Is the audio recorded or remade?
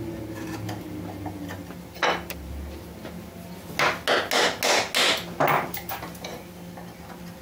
recorded